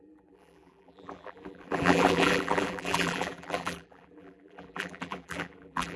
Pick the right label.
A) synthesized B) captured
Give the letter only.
A